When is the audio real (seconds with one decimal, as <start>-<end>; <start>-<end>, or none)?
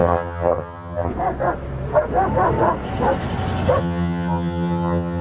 1.1-3.8